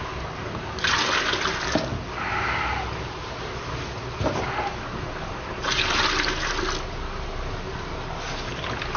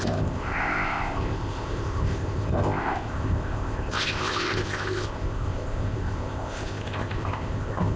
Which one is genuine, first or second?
first